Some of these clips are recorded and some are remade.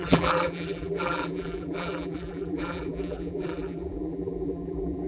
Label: remade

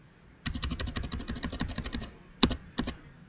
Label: recorded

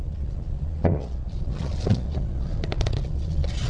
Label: remade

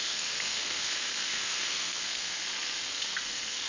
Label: remade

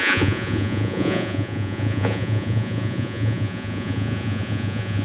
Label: remade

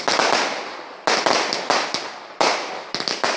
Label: recorded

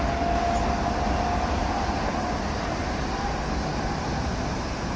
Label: recorded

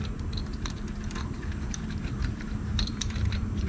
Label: remade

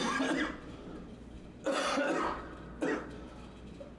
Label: recorded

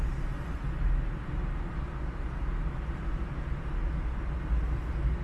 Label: recorded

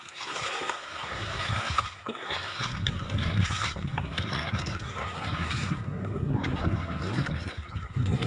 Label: remade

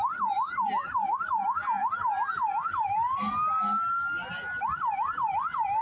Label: recorded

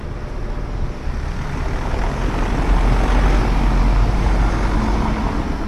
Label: recorded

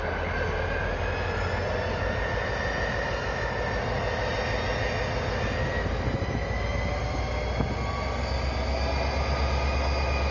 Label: recorded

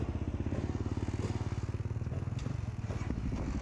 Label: recorded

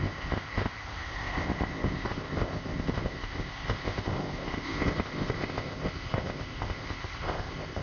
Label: remade